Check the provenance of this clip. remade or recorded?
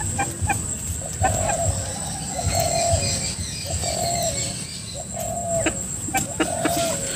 recorded